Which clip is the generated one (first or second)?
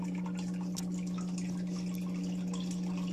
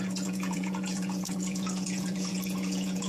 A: second